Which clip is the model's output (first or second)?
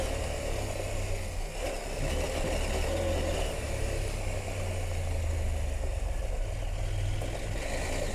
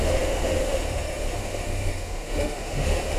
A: second